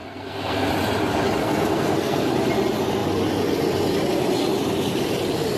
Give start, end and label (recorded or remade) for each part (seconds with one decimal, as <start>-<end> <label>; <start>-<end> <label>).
0.0-0.7 remade; 0.7-1.4 recorded; 1.4-2.3 remade; 2.3-5.6 recorded